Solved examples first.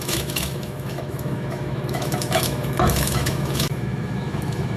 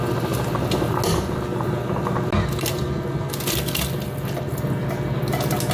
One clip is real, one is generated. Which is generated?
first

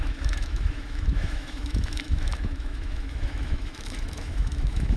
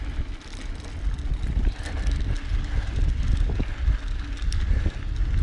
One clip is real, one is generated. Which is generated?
first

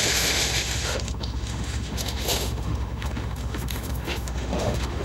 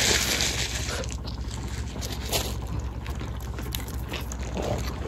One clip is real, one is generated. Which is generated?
first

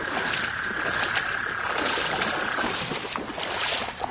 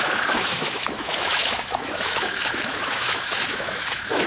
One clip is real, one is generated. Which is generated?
second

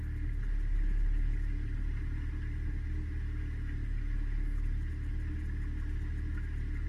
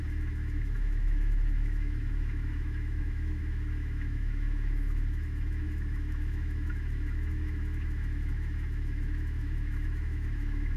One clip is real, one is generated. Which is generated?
second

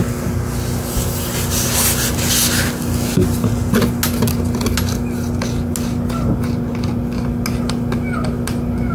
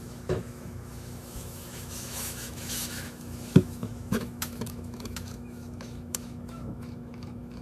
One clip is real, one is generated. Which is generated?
second